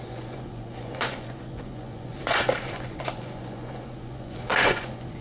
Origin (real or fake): fake